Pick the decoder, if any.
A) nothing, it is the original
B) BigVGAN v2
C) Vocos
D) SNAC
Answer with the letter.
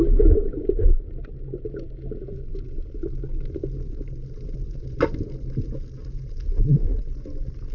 A